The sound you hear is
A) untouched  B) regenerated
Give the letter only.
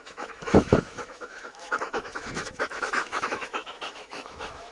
B